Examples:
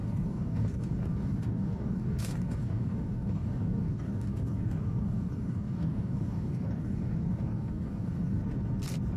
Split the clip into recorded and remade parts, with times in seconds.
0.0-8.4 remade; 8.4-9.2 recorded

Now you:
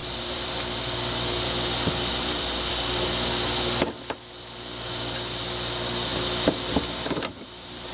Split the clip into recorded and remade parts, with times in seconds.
0.0-0.5 remade; 0.5-2.1 recorded; 2.1-2.7 remade; 2.7-7.9 recorded

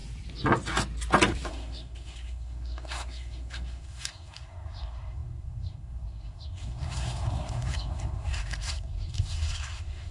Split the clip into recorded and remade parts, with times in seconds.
0.0-1.5 recorded; 1.5-10.1 remade

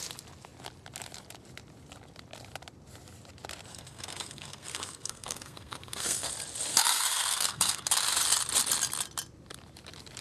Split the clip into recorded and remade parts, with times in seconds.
0.0-3.7 recorded; 3.7-6.3 remade; 6.3-6.7 recorded; 6.7-7.9 remade; 7.9-10.2 recorded

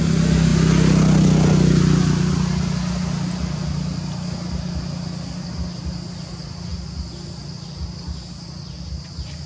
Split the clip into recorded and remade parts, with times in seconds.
0.0-9.5 recorded

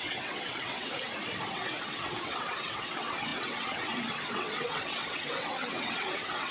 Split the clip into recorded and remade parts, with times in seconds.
0.0-0.9 remade; 0.9-1.5 recorded; 1.5-6.5 remade

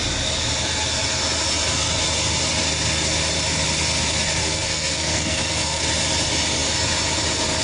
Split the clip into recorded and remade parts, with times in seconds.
0.0-4.4 recorded; 4.4-5.8 remade; 5.8-7.6 recorded